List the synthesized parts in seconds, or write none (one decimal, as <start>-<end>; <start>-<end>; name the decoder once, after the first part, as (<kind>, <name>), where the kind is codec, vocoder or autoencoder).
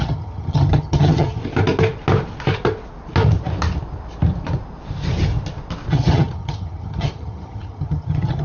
0.0-1.4 (vocoder, HiFi-GAN); 5.9-8.4